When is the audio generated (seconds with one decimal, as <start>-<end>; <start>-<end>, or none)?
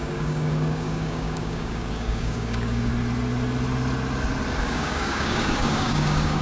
0.0-2.9; 4.6-6.4